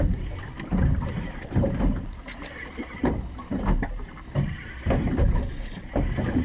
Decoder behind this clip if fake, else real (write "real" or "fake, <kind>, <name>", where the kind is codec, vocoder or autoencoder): real